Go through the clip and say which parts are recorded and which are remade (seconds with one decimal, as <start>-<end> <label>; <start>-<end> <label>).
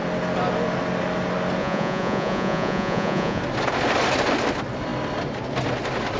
0.0-1.6 recorded; 1.6-3.4 remade; 3.4-6.2 recorded